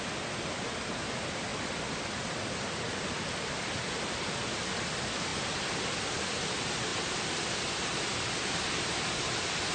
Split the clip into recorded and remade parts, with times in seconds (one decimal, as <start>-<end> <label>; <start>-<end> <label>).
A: 0.0-9.7 recorded